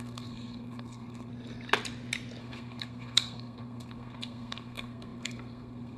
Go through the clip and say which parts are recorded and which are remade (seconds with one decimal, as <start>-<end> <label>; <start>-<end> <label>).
0.0-1.3 remade; 1.3-2.4 recorded; 2.4-6.0 remade